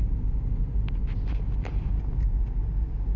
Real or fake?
real